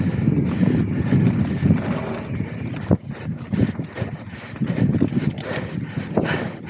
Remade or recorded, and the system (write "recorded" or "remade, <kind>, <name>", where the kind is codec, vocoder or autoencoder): recorded